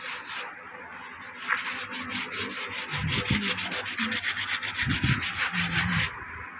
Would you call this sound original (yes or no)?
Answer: yes